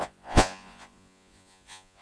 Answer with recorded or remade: remade